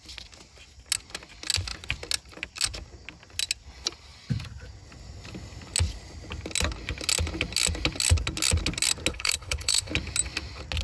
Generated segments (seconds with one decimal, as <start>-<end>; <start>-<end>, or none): 9.1-9.9